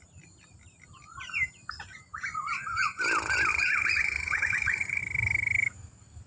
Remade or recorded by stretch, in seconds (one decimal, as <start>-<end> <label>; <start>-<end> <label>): 0.0-2.1 recorded; 2.1-3.0 remade; 3.0-3.5 recorded; 3.5-5.0 remade; 5.0-6.3 recorded